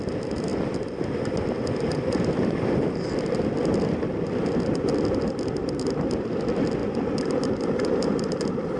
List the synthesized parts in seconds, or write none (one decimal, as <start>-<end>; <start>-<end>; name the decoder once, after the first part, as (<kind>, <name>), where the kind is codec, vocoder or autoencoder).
6.8-8.8 (vocoder, BigVGAN v2)